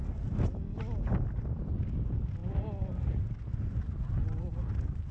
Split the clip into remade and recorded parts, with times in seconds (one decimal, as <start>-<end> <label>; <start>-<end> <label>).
0.0-5.1 recorded

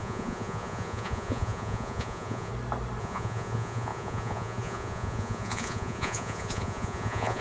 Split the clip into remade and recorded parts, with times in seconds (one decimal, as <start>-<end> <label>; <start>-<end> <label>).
0.0-2.5 remade; 2.5-3.0 recorded; 3.0-7.4 remade

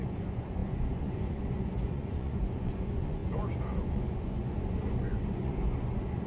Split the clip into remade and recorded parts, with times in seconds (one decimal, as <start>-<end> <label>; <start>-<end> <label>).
0.0-6.3 remade

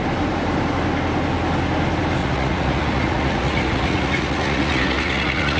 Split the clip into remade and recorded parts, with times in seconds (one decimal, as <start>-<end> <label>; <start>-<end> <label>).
0.0-2.2 recorded; 2.2-5.6 remade